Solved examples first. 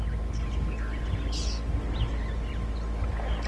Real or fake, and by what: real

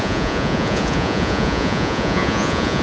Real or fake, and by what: fake, vocoder, Vocos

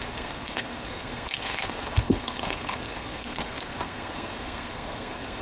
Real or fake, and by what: fake, codec, SNAC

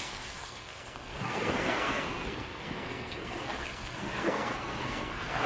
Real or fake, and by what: fake, codec, SNAC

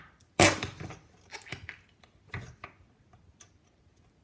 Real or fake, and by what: real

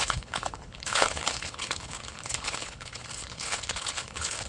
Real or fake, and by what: fake, codec, HILCodec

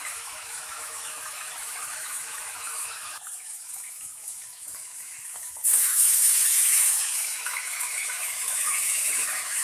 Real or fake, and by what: fake, autoencoder, DAC-VAE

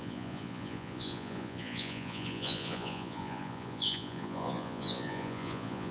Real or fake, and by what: fake, vocoder, Vocos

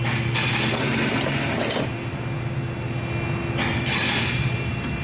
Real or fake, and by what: real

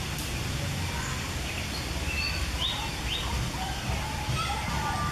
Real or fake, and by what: real